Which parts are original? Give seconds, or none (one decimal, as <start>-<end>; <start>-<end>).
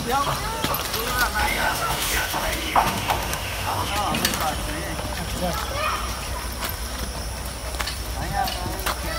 0.0-1.4; 3.9-9.2